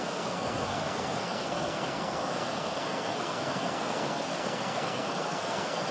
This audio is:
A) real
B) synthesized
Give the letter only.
B